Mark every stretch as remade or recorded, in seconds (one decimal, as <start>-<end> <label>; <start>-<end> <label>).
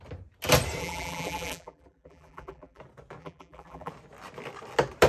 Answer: 0.0-0.8 recorded; 0.8-2.8 remade; 2.8-3.2 recorded; 3.2-3.9 remade; 3.9-5.1 recorded